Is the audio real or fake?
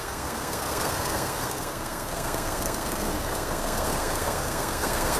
fake